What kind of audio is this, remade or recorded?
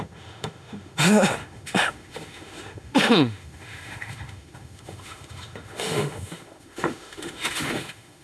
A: remade